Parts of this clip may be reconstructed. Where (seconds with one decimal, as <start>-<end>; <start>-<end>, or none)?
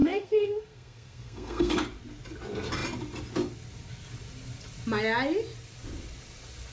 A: 0.0-1.8